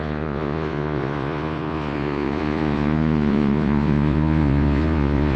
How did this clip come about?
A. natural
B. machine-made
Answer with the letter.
B